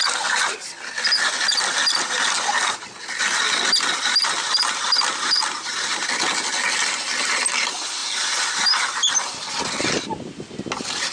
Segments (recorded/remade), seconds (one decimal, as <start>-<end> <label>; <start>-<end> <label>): 0.0-8.0 recorded; 8.0-8.5 remade; 8.5-11.1 recorded